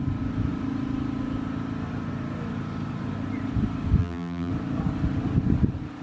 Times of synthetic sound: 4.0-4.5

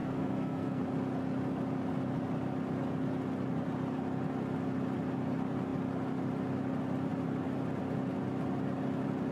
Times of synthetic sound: 0.0-0.8

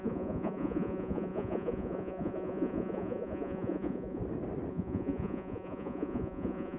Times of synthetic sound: 0.0-4.2; 4.7-6.8